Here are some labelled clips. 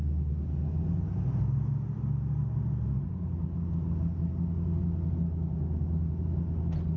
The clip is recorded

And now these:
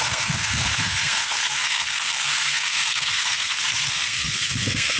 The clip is remade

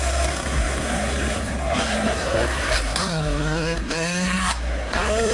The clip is remade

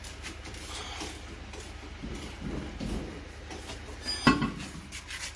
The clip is recorded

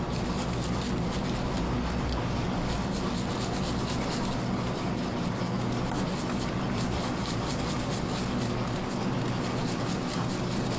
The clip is recorded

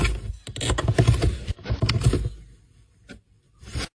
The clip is recorded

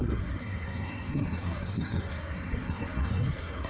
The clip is remade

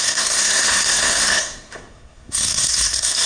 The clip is remade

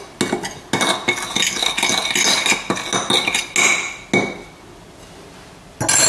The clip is recorded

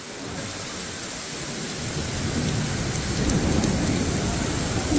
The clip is recorded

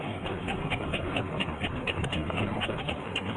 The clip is remade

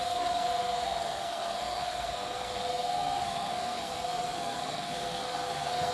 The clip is remade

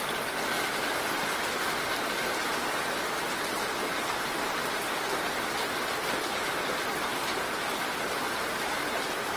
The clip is recorded